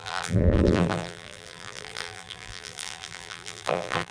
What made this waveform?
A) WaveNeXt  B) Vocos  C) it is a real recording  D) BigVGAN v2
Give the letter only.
D